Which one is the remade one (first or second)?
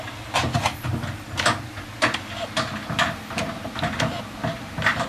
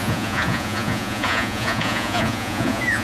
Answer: second